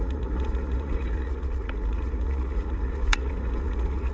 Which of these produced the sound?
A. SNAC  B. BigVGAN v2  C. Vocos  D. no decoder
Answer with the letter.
C